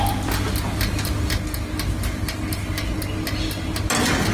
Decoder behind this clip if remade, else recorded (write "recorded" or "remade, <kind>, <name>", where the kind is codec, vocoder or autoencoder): recorded